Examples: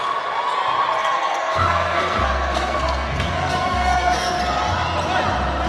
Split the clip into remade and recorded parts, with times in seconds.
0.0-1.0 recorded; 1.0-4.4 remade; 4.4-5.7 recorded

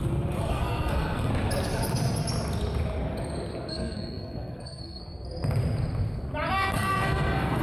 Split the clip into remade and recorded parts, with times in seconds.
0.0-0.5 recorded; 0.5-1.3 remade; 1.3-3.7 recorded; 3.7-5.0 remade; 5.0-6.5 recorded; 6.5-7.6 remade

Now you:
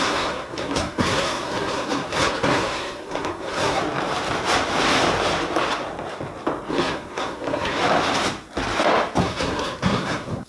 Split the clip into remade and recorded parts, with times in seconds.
0.0-3.8 remade; 3.8-6.7 recorded; 6.7-7.8 remade; 7.8-9.2 recorded; 9.2-10.5 remade